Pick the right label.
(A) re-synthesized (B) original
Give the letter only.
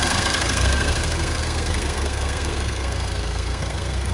A